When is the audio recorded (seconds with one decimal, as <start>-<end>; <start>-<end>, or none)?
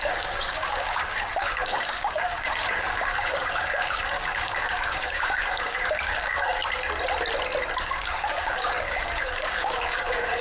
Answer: 6.6-7.8